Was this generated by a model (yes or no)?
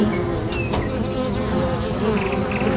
no